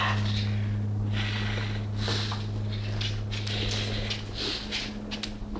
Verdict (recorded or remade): recorded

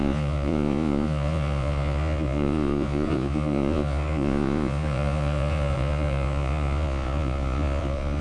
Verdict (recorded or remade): remade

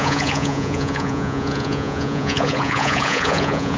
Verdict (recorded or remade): remade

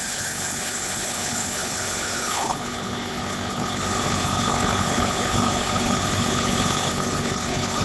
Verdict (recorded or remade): remade